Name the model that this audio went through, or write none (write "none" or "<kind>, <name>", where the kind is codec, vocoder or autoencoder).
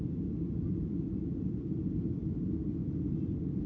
none